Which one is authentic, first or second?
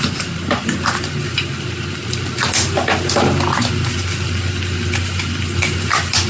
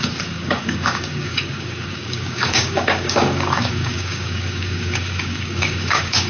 first